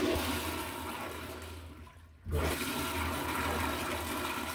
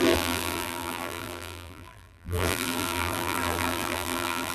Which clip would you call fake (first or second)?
second